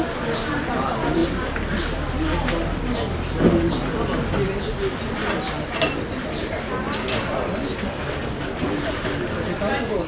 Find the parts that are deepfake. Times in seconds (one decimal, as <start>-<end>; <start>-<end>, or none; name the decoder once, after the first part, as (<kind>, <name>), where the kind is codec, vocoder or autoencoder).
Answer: none

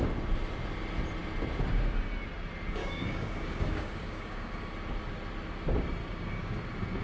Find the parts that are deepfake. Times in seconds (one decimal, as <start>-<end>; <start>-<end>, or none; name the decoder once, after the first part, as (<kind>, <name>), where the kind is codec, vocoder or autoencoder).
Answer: 2.8-4.7 (codec, DAC); 6.0-6.5